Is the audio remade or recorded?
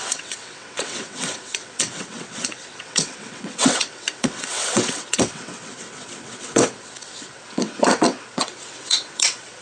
remade